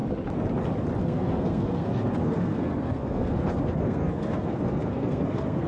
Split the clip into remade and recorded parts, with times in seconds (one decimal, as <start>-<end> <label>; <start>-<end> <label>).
0.0-1.0 recorded; 1.0-5.7 remade